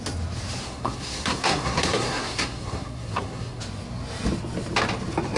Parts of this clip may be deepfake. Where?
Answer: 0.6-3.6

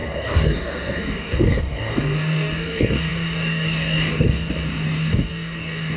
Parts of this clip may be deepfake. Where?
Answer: 0.0-6.0